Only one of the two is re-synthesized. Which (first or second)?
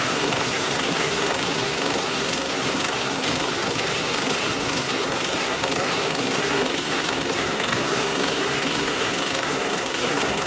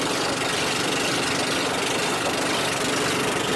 first